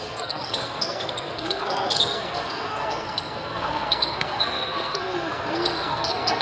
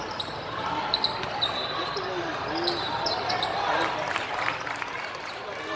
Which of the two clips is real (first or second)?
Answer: second